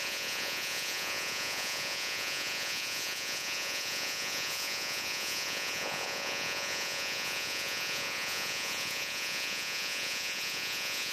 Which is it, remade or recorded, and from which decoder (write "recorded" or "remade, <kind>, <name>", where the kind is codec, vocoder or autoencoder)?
remade, vocoder, Vocos